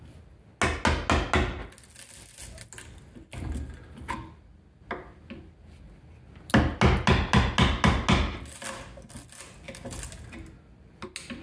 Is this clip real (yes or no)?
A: yes